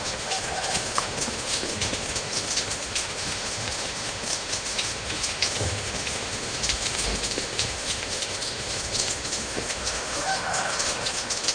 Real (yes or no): no